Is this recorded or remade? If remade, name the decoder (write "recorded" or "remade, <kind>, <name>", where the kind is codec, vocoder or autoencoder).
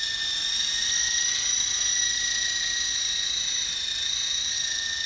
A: recorded